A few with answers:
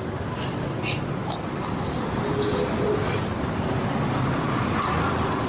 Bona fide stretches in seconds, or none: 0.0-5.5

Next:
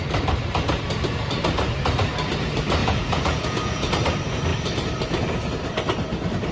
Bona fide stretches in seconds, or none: 0.0-2.8; 3.9-6.5

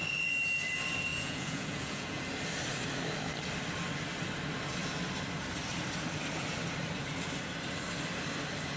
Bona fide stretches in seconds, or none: 0.0-1.1; 2.2-8.8

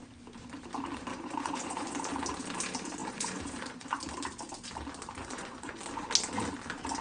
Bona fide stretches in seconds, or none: 0.0-1.1; 1.9-3.0; 3.9-5.2; 5.8-7.0